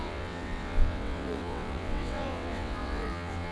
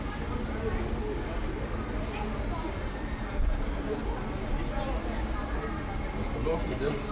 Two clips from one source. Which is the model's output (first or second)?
first